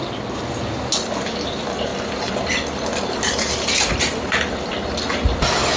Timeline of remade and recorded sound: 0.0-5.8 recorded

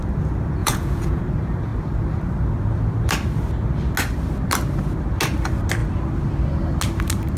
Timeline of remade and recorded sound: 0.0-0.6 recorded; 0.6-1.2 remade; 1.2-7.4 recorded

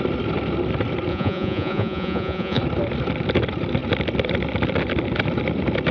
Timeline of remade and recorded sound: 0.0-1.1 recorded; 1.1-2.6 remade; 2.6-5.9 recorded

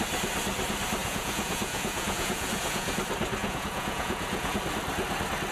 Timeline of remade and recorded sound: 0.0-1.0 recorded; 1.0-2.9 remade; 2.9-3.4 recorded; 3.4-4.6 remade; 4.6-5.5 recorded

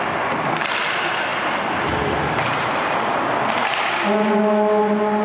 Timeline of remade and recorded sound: 0.0-5.2 recorded

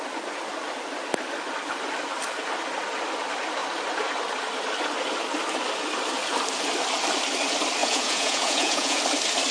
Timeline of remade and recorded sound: 0.0-7.8 recorded; 7.8-9.0 remade; 9.0-9.5 recorded

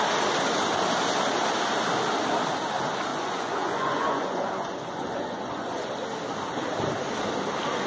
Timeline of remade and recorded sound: 0.0-3.1 recorded; 3.1-5.9 remade; 5.9-7.9 recorded